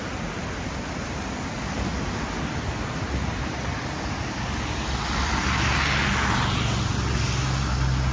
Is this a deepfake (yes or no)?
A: no